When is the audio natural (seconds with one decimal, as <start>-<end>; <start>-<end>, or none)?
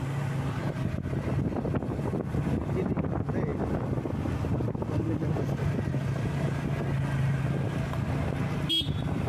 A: 0.0-0.6; 1.3-9.3